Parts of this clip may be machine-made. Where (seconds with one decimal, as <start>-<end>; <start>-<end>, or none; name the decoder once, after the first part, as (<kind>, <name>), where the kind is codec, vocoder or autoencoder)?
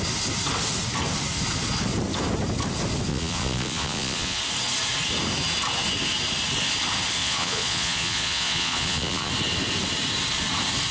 3.1-4.4 (vocoder, Vocos); 7.2-9.3